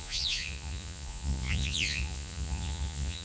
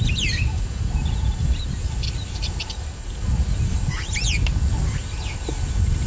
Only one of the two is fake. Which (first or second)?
first